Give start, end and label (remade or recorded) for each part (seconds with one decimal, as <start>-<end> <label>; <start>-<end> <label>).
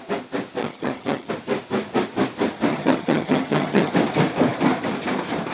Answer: 0.0-0.6 recorded; 0.6-1.3 remade; 1.3-2.7 recorded; 2.7-3.9 remade; 3.9-5.5 recorded